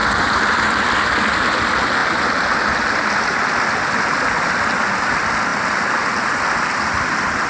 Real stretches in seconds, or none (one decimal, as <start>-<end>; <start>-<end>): 0.0-7.5